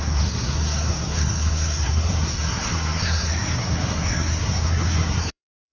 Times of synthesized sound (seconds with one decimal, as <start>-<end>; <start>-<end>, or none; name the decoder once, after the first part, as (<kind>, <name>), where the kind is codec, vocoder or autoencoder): 0.0-5.7 (codec, SNAC)